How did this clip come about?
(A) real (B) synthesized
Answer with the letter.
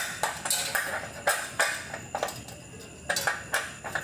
A